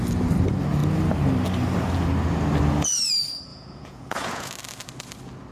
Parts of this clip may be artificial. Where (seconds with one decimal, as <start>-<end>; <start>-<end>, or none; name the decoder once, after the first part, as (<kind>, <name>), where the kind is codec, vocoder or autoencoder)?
3.5-4.5 (vocoder, Vocos)